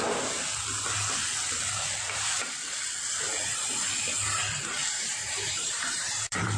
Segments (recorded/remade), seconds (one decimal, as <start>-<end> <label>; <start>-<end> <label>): 0.0-4.8 recorded; 4.8-6.6 remade